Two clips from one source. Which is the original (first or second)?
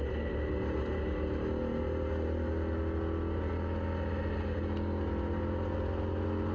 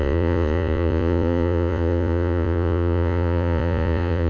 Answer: first